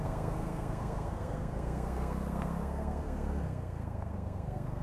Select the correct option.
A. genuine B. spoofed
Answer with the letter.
B